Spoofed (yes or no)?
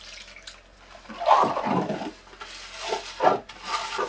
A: no